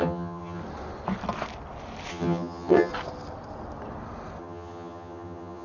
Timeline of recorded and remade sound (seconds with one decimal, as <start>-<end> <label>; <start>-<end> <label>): 0.0-0.6 remade; 0.6-2.1 recorded; 2.1-2.9 remade; 2.9-4.4 recorded; 4.4-5.6 remade